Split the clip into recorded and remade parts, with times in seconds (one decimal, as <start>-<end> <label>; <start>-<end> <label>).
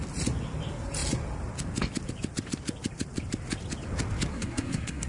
0.0-4.3 recorded; 4.3-5.1 remade